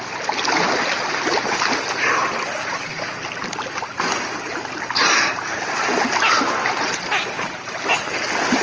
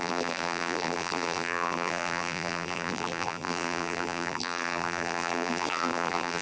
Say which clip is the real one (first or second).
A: first